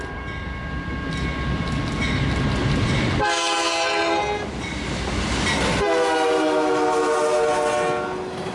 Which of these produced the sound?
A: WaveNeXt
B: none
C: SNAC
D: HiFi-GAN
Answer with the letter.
B